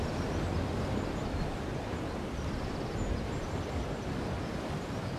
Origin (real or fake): real